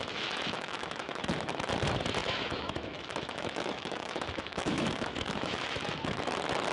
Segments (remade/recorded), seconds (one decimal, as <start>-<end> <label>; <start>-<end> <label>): 0.0-1.2 remade; 1.2-2.2 recorded; 2.2-6.2 remade; 6.2-6.7 recorded